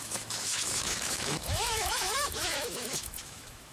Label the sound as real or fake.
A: fake